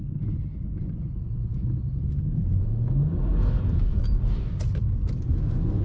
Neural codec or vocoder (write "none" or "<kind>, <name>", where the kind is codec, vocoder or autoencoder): none